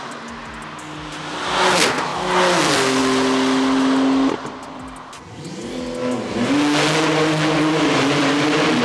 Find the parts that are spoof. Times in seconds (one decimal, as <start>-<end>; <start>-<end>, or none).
none